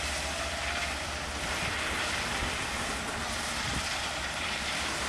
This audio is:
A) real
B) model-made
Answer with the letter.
B